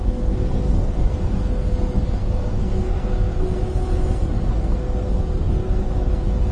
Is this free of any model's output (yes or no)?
no